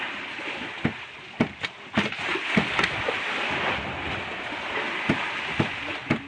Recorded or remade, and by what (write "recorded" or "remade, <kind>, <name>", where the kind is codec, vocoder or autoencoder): recorded